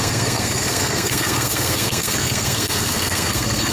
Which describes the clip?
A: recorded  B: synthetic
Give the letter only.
B